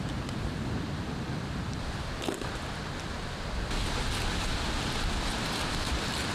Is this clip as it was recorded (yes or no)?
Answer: yes